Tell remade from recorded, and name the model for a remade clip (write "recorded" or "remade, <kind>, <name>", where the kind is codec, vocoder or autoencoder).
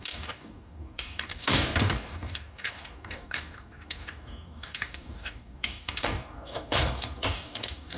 remade, codec, DAC